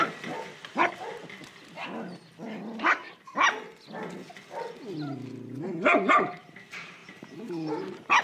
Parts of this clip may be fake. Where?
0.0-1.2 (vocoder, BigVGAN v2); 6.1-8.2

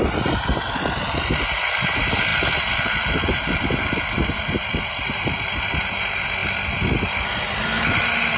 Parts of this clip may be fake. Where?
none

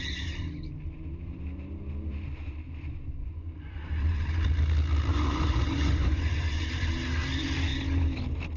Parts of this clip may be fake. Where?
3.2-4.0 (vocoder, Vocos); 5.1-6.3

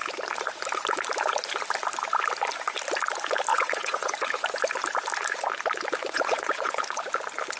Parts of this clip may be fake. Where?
3.5-4.1 (vocoder, WaveNeXt); 6.0-6.8

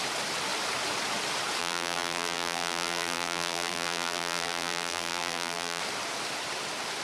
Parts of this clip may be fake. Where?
1.6-5.8 (vocoder, BigVGAN v2)

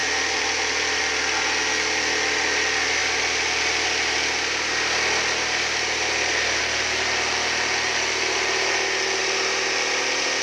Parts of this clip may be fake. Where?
0.0-1.0 (vocoder, BigVGAN v2); 3.0-6.6; 9.2-10.4

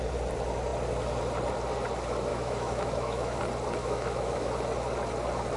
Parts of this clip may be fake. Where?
2.3-3.4 (autoencoder, DAC-VAE); 3.8-4.5

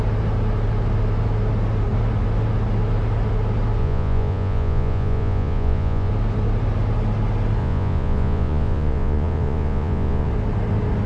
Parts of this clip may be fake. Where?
3.8-6.1 (vocoder, Vocos); 7.6-10.3